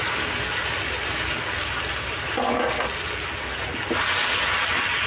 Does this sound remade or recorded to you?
recorded